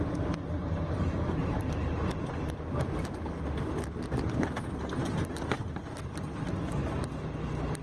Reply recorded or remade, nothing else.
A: recorded